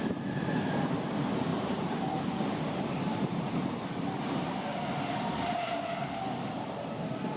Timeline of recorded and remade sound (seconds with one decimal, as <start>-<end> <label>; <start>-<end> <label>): 0.0-1.5 recorded; 1.5-3.5 remade; 3.5-7.4 recorded